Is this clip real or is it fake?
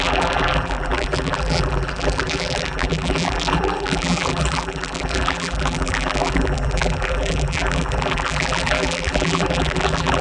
fake